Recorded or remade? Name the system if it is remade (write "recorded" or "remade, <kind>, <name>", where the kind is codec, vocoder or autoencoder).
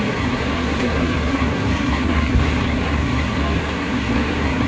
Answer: remade, codec, SNAC